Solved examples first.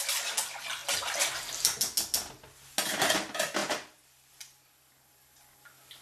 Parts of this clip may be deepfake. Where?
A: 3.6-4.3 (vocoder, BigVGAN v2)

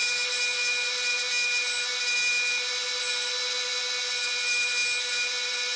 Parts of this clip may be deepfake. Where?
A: none

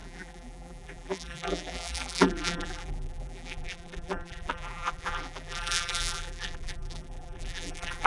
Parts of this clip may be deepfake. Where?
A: 0.0-8.1 (vocoder, BigVGAN v2)

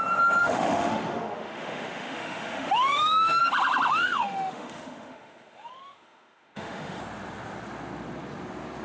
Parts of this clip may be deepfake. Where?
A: 0.4-3.4 (autoencoder, DAC-VAE); 3.9-7.0

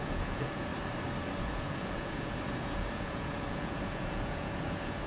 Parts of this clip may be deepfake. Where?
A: 0.0-0.7 (vocoder, Vocos); 1.4-5.1

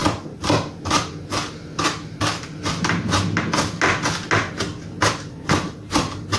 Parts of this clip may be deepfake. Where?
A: none